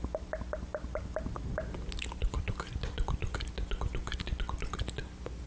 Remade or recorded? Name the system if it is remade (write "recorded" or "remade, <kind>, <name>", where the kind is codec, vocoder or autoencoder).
recorded